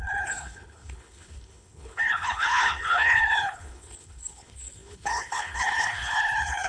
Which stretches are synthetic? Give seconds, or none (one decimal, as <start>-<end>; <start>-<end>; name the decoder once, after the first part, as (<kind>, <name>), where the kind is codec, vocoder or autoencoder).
0.0-6.7 (codec, HILCodec)